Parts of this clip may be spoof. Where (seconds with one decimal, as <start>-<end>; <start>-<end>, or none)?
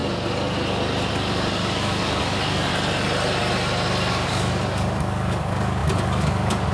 1.1-2.7; 4.1-6.7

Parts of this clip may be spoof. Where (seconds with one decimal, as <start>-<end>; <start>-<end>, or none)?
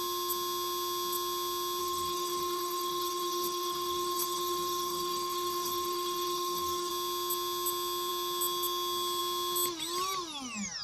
1.8-6.9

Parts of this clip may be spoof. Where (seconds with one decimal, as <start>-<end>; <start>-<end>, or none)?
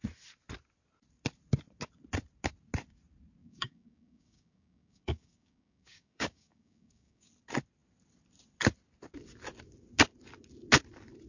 3.4-7.3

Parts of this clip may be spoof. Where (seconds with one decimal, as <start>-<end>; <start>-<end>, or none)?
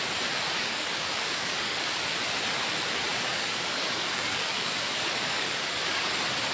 0.6-1.9; 3.1-6.1